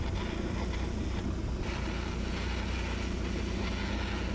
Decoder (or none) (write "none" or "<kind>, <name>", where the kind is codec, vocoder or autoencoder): none